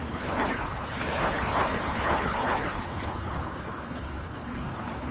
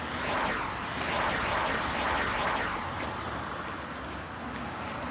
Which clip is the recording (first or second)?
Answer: second